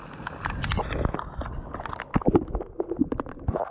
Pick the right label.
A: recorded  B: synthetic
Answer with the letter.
A